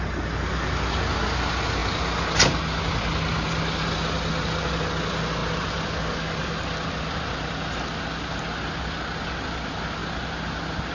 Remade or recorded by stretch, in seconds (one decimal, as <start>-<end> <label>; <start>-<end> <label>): 0.0-10.9 recorded